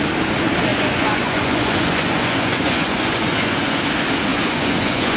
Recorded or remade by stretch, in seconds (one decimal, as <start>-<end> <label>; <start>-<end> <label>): 0.0-0.7 recorded; 0.7-3.8 remade; 3.8-4.3 recorded; 4.3-5.2 remade